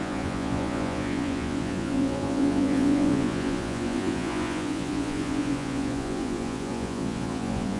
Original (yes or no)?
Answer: no